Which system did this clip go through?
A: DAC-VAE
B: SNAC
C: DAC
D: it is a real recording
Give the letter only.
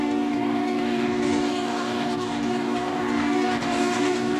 C